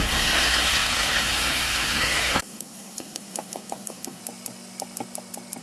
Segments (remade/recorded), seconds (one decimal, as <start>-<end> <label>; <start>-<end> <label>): 0.0-4.2 remade; 4.2-5.6 recorded